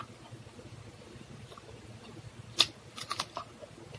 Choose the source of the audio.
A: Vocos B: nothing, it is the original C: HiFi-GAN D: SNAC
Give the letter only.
B